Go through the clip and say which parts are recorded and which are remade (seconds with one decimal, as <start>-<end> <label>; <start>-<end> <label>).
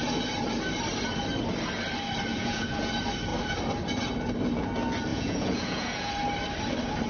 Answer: 0.0-2.3 recorded; 2.3-2.9 remade; 2.9-5.1 recorded; 5.1-6.1 remade; 6.1-7.1 recorded